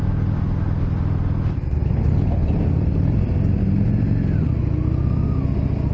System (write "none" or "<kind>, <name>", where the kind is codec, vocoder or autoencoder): none